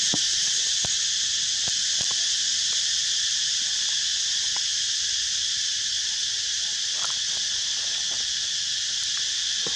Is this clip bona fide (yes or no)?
yes